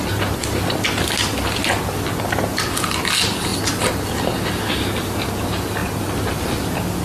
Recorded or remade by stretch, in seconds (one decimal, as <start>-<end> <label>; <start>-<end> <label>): 0.0-7.0 recorded